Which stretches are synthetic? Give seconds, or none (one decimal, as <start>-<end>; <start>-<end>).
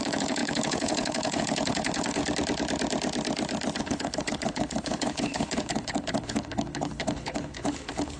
0.0-2.2; 3.8-8.2